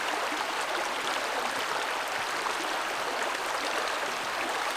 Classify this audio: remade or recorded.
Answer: recorded